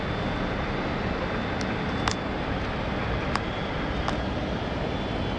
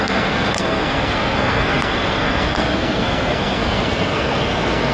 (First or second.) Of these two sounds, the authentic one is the first